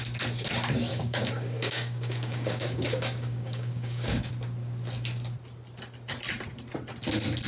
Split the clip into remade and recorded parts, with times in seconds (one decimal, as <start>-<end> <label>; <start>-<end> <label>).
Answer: 0.0-0.9 recorded; 0.9-4.3 remade; 4.3-7.5 recorded